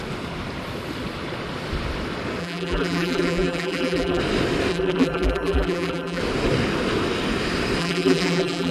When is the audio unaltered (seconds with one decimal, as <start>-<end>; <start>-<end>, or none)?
0.0-2.4; 4.2-4.7; 6.2-7.8